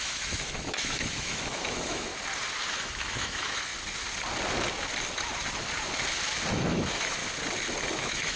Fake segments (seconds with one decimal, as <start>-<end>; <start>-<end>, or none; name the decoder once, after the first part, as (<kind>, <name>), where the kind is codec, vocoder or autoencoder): 0.0-2.1 (autoencoder, DAC-VAE); 2.7-3.7; 6.5-7.2; 7.9-8.4